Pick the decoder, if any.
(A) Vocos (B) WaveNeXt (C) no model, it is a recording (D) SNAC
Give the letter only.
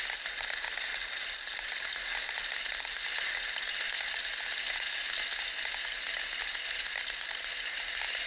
C